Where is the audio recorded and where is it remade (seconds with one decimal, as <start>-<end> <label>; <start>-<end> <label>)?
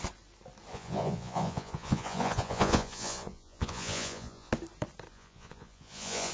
0.0-0.7 recorded; 0.7-4.5 remade; 4.5-5.1 recorded; 5.1-6.3 remade